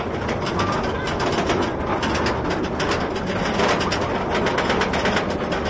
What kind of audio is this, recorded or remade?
recorded